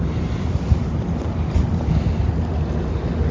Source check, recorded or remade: recorded